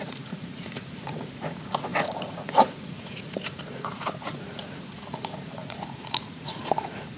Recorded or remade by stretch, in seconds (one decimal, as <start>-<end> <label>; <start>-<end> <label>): 0.0-7.2 remade